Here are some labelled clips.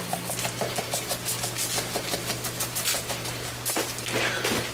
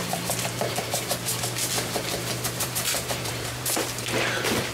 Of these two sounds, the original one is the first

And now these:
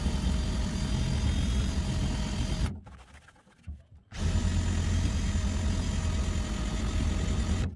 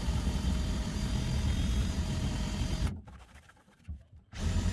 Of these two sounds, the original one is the first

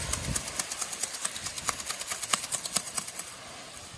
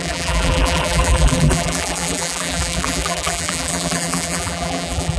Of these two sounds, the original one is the first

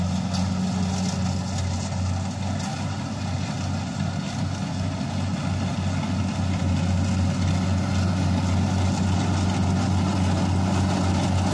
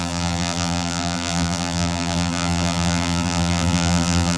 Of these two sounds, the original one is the first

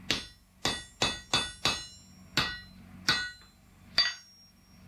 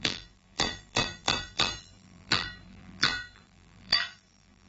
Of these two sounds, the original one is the first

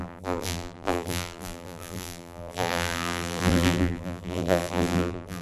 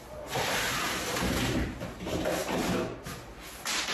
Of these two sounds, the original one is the second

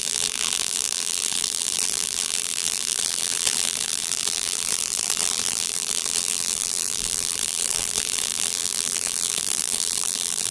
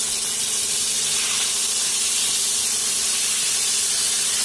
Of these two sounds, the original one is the second